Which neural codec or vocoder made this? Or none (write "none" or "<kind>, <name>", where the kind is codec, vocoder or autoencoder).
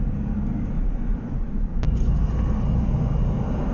none